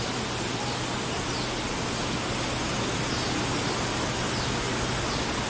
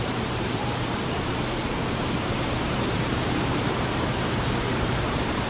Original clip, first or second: first